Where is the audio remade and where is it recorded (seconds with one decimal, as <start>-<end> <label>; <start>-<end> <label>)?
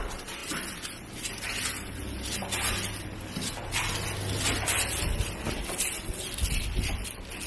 0.0-7.5 recorded